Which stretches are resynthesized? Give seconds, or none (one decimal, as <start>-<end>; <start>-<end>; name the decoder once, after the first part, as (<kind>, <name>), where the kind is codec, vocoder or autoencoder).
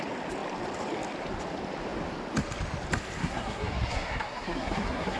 3.2-5.2 (codec, SNAC)